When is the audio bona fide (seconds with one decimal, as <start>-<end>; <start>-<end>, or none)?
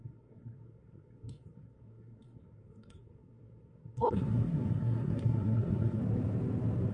6.0-6.9